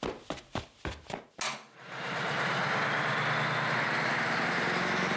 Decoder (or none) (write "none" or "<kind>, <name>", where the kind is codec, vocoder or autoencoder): none